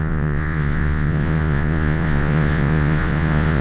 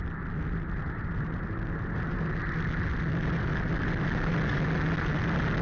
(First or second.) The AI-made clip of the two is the first